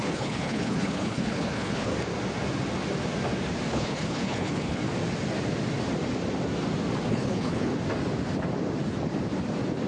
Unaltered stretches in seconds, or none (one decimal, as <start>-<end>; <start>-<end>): 1.9-3.7; 4.8-7.1; 7.7-9.9